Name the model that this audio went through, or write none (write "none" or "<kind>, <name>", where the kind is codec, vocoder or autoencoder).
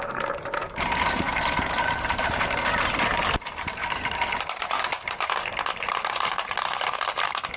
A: vocoder, BigVGAN v2